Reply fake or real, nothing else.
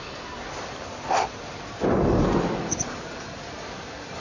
real